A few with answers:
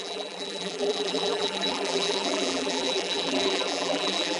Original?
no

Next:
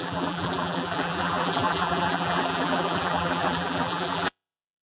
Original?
no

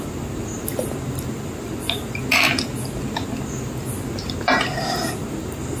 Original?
yes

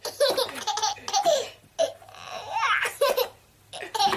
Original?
yes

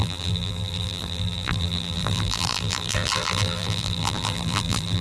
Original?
no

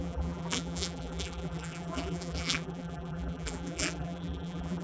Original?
no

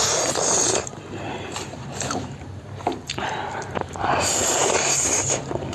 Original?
no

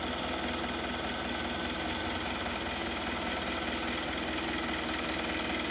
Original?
yes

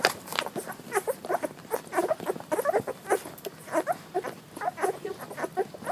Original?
no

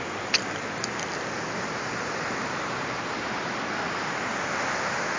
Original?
yes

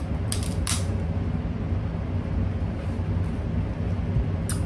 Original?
yes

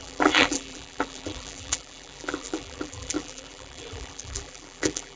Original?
no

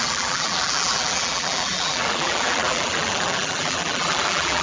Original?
no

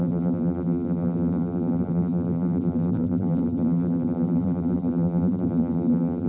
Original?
no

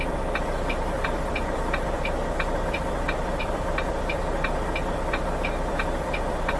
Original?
no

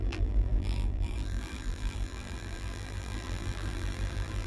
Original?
no